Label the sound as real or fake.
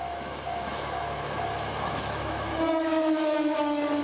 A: fake